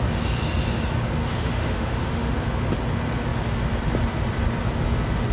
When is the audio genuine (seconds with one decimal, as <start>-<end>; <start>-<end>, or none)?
0.0-1.2; 2.3-5.3